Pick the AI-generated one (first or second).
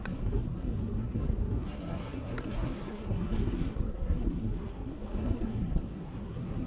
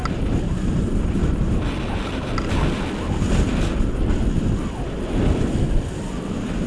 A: first